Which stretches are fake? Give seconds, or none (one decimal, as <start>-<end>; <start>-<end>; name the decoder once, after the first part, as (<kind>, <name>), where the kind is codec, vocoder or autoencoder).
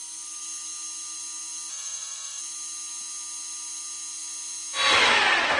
1.7-2.4 (autoencoder, DAC-VAE)